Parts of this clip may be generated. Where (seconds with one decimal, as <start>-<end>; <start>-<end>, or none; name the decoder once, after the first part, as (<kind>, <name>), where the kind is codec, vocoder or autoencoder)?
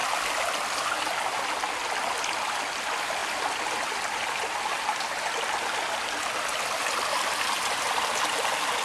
none